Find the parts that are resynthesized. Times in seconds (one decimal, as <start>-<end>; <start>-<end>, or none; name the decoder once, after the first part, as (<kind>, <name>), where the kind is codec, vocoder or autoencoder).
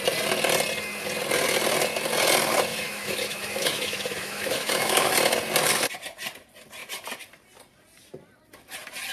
2.7-5.1 (autoencoder, DAC-VAE)